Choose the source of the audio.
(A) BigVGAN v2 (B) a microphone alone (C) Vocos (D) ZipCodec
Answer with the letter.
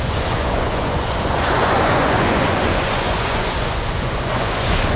C